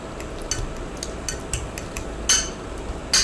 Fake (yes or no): no